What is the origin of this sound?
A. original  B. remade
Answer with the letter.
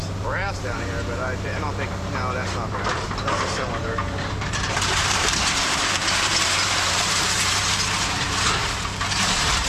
B